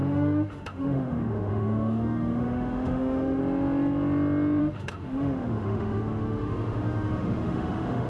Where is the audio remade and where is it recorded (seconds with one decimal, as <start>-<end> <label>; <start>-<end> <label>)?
0.0-3.4 remade; 3.4-4.6 recorded; 4.6-8.1 remade